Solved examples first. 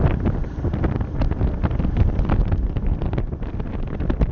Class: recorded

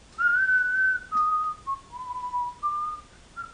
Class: recorded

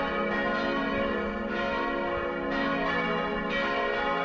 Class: recorded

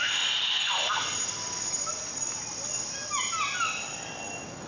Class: recorded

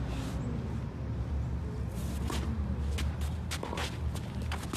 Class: recorded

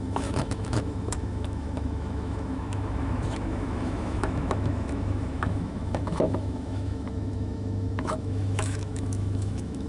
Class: remade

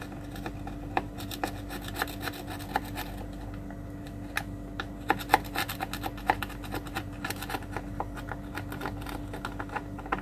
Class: recorded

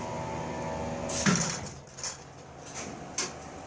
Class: recorded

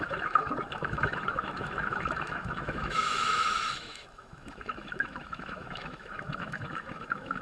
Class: remade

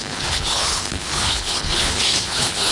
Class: remade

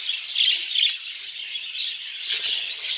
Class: recorded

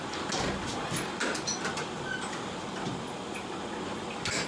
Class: recorded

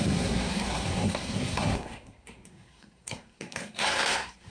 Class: remade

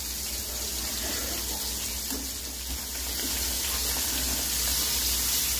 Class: recorded